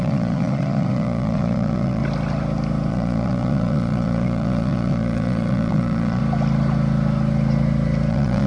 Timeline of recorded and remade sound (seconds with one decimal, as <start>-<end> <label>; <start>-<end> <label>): 0.0-2.0 remade; 2.0-2.9 recorded; 2.9-6.2 remade; 6.2-8.1 recorded; 8.1-8.5 remade